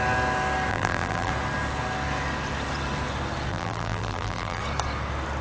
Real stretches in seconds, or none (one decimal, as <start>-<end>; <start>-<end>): 0.0-0.7; 1.3-3.5; 4.6-5.4